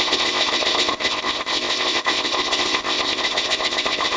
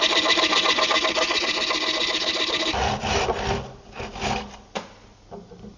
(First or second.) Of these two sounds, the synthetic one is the first